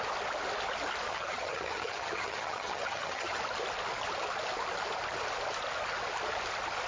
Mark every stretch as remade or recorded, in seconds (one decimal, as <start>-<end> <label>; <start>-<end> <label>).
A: 0.0-1.1 recorded; 1.1-3.4 remade; 3.4-6.9 recorded

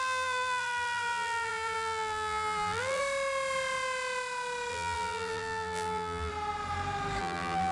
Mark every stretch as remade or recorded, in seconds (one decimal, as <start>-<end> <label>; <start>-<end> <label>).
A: 0.0-3.0 remade; 3.0-4.7 recorded; 4.7-6.3 remade; 6.3-7.2 recorded; 7.2-7.7 remade

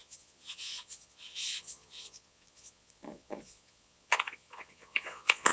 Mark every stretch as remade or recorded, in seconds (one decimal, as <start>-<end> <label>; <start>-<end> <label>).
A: 0.0-5.5 remade

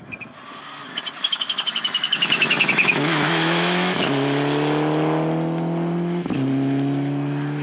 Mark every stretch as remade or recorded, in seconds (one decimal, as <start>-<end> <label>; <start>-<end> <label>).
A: 0.0-1.2 recorded; 1.2-4.0 remade; 4.0-7.6 recorded

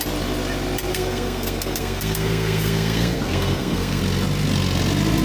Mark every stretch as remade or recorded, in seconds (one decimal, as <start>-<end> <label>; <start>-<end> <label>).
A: 0.0-0.9 recorded; 0.9-4.0 remade; 4.0-5.2 recorded

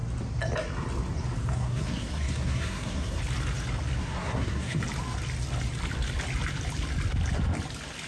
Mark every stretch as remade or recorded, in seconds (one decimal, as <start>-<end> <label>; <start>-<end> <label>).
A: 0.0-1.5 recorded; 1.5-3.2 remade; 3.2-4.0 recorded; 4.0-4.8 remade; 4.8-8.1 recorded

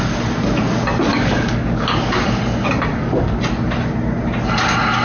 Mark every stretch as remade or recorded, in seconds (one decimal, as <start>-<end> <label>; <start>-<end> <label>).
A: 0.0-1.1 recorded; 1.1-2.4 remade; 2.4-2.9 recorded; 2.9-3.4 remade; 3.4-5.0 recorded

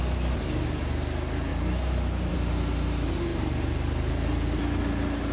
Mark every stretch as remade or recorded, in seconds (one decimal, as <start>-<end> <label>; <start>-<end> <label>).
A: 0.0-5.3 recorded